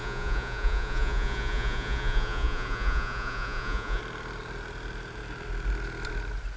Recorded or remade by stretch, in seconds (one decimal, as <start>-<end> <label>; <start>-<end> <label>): 0.0-4.0 remade; 4.0-6.6 recorded